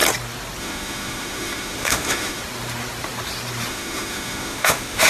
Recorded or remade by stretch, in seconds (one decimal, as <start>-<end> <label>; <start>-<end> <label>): 0.0-0.6 recorded; 0.6-2.4 remade; 2.4-3.7 recorded; 3.7-5.1 remade